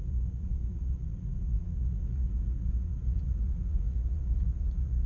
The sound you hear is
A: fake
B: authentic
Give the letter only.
A